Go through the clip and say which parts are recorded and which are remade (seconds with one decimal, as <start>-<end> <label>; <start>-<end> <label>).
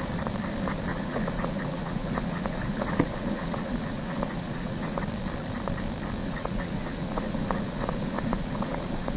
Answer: 0.0-0.9 recorded; 0.9-5.0 remade; 5.0-6.2 recorded; 6.2-9.2 remade